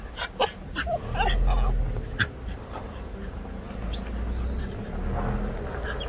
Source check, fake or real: real